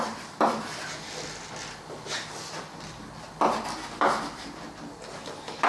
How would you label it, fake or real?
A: real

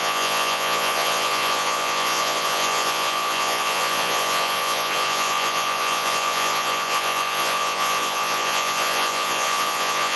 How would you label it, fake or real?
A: fake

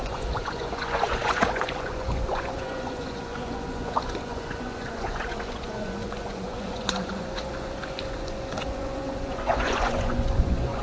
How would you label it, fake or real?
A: fake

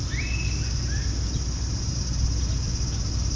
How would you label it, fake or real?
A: real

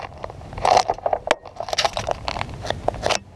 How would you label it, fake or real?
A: real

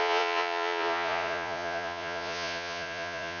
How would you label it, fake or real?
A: fake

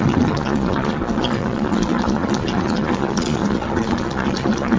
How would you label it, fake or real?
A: fake